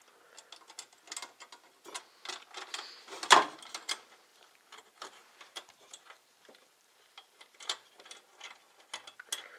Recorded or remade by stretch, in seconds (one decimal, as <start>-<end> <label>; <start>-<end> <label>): 0.0-4.3 recorded; 4.3-8.1 remade; 8.1-9.6 recorded